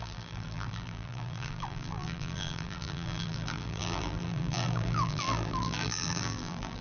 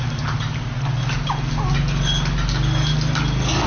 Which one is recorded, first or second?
second